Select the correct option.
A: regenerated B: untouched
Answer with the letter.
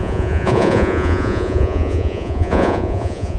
A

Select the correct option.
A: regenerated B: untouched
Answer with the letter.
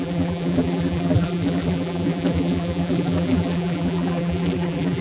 A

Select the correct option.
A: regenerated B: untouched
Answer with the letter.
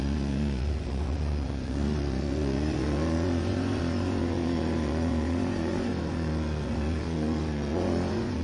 A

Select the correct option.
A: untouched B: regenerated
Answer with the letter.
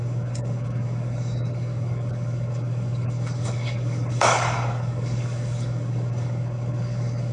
B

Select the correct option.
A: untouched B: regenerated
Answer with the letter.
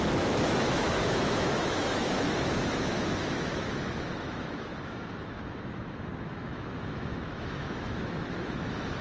B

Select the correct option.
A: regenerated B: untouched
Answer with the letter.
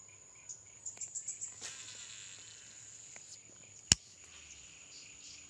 B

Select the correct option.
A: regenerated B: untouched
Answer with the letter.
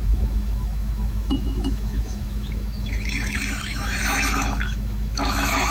A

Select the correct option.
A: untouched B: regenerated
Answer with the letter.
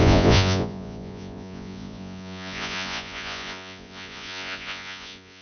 B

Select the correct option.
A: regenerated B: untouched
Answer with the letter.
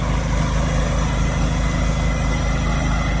B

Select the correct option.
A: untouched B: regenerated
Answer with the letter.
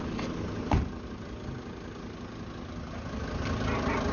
A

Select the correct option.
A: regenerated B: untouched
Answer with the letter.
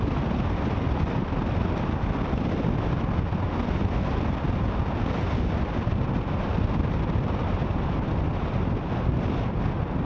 B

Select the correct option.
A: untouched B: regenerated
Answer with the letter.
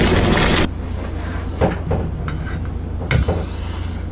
A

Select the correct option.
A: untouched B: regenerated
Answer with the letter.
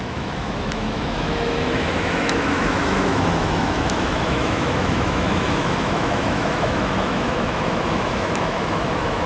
B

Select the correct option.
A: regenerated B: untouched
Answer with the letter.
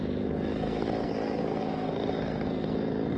A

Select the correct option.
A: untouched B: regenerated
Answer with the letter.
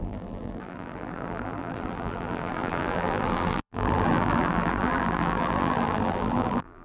B